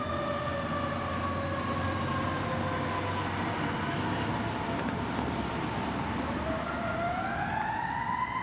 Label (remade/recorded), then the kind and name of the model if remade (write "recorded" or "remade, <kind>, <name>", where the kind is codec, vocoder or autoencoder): recorded